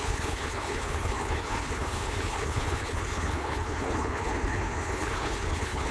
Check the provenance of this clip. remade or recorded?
remade